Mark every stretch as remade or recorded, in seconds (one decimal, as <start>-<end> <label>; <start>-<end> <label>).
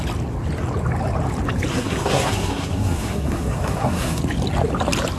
0.0-1.7 recorded; 1.7-4.2 remade; 4.2-5.2 recorded